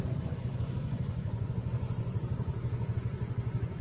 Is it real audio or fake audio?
fake